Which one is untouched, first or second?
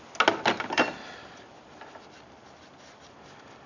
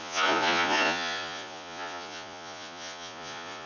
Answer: first